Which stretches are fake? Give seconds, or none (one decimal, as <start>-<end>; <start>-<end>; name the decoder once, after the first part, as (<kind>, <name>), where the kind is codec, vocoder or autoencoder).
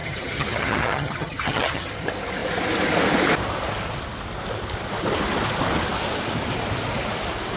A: 0.0-1.9 (vocoder, HiFi-GAN)